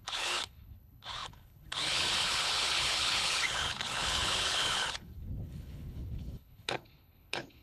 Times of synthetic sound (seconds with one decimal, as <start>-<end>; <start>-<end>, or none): 0.0-7.6